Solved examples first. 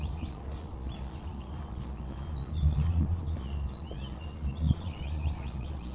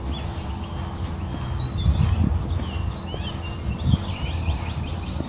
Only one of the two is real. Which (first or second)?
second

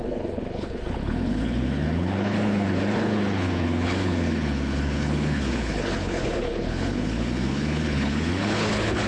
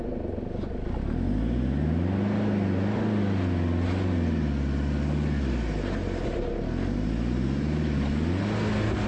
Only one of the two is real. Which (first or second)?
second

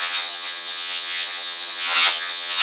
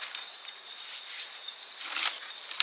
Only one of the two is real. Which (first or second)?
second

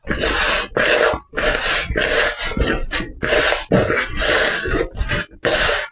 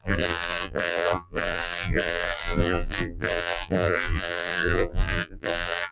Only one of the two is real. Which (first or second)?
first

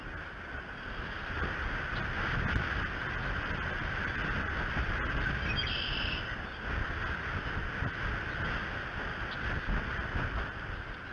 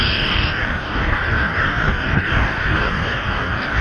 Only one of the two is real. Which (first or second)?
first